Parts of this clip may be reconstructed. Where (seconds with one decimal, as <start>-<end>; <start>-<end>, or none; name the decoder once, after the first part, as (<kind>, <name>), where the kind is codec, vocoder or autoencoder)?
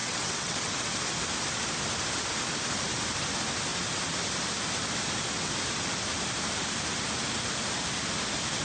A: 0.0-0.7 (vocoder, WaveNeXt)